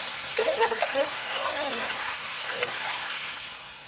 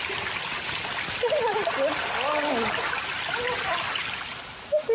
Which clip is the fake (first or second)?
first